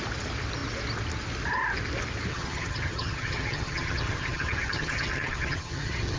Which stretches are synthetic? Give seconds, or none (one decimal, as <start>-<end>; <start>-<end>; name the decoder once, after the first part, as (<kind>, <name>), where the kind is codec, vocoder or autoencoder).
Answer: 2.3-6.2 (vocoder, HiFi-GAN)